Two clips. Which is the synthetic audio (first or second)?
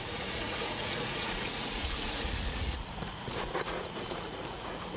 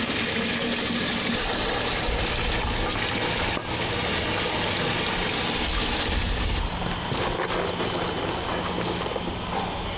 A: first